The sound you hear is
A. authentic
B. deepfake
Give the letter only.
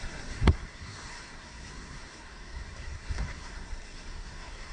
B